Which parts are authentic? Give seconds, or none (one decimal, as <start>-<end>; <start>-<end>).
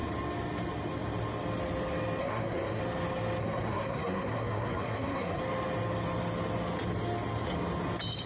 0.0-2.2; 2.8-3.4; 5.4-8.3